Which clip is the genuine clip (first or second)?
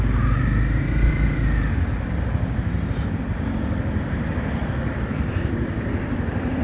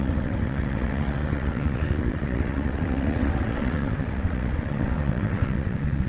first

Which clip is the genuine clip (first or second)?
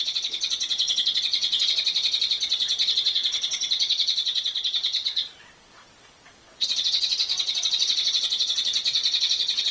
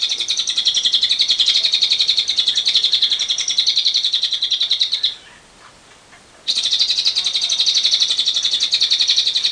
second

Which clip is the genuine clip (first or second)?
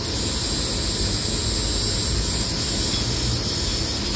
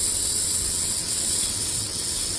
first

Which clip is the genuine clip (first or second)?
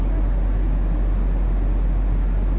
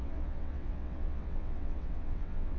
first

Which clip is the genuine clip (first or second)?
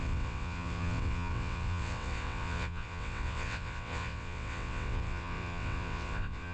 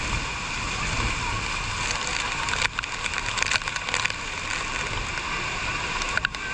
second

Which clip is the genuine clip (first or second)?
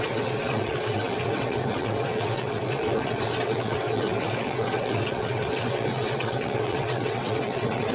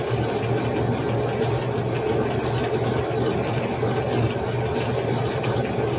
second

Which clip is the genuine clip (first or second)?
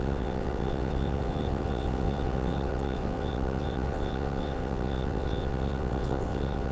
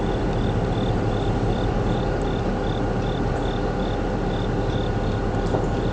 second